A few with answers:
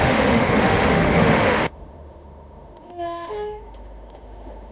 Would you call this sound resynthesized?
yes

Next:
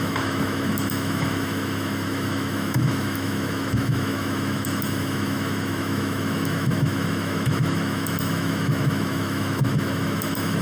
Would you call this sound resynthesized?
yes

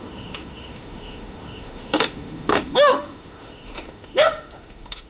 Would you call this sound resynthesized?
yes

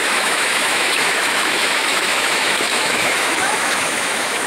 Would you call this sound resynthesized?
yes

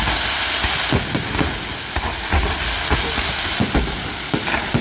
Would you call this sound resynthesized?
no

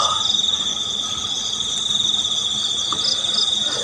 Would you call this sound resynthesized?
no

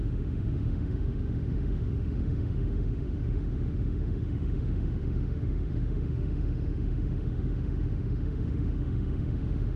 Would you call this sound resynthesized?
yes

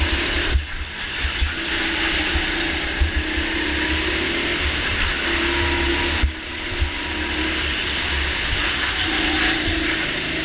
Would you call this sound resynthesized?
no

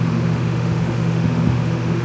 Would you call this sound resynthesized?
yes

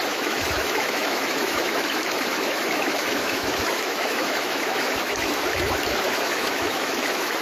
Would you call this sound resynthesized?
yes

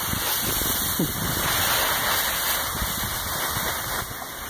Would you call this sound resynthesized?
no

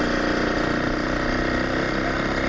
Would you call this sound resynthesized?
no